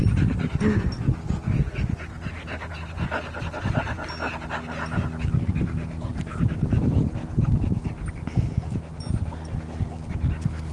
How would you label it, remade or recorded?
recorded